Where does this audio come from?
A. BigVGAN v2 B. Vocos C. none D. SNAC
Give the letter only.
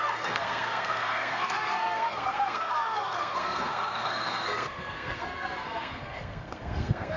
D